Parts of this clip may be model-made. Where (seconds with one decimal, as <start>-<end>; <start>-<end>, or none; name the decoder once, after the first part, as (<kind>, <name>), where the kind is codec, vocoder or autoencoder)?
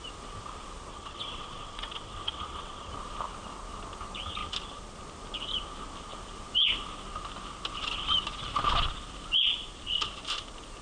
0.9-2.9 (vocoder, WaveNeXt)